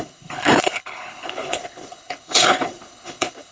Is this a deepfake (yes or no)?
yes